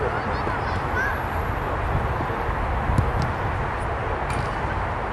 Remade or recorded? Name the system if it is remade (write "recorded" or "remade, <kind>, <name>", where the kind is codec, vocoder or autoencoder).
recorded